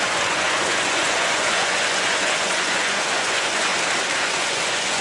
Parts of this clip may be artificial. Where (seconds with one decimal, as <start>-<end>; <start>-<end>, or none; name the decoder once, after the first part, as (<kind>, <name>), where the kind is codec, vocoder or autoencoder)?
0.0-3.7 (vocoder, Vocos); 4.2-5.0